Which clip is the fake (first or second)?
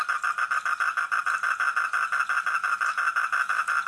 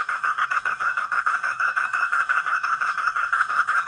second